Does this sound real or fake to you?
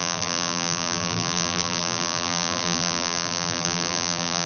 fake